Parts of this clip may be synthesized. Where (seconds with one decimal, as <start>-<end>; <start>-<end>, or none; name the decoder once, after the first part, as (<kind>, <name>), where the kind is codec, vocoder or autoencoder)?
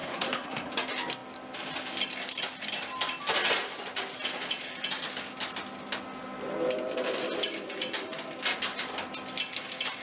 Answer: 0.0-0.7 (codec, SNAC)